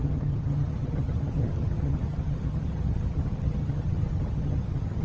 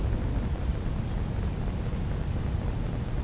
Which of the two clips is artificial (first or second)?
first